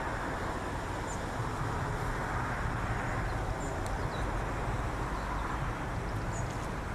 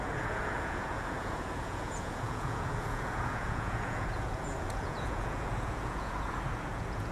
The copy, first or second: second